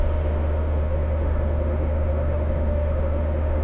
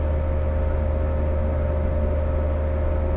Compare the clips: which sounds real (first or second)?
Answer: second